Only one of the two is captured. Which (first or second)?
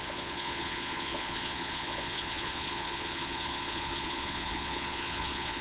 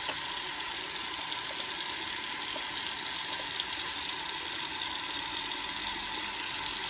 second